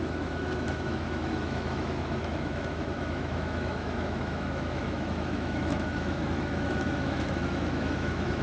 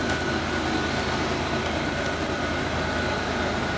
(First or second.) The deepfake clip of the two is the first